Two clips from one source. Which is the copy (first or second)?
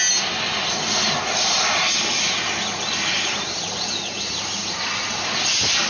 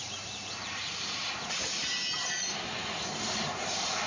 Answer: second